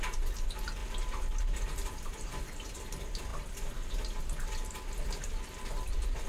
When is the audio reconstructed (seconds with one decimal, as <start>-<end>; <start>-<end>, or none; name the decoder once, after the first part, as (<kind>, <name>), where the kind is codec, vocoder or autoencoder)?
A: none